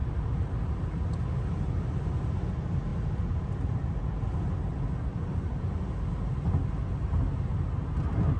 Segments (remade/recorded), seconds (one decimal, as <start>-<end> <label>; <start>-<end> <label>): 0.0-1.2 remade; 1.2-8.4 recorded

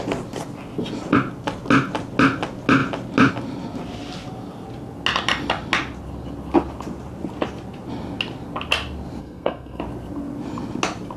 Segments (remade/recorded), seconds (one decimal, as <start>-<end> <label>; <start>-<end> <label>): 0.0-9.2 recorded; 9.2-9.8 remade; 9.8-11.2 recorded

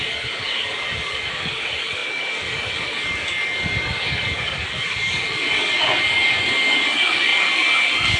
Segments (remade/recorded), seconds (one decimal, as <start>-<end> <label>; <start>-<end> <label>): 0.0-8.2 remade

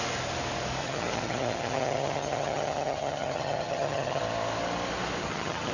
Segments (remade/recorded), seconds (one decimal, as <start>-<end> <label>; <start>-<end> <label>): 0.0-0.8 recorded; 0.8-4.2 remade; 4.2-5.2 recorded; 5.2-5.7 remade